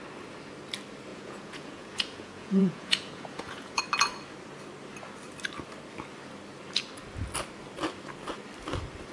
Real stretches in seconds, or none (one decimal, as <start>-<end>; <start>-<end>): 0.0-1.1; 3.8-9.1